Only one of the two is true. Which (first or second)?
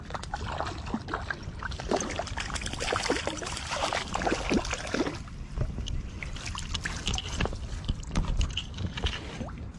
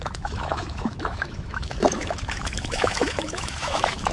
first